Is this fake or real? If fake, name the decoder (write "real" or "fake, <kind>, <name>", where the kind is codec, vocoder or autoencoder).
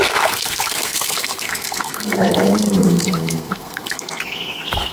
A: fake, codec, SNAC